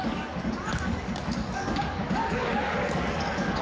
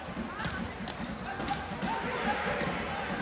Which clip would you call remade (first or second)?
first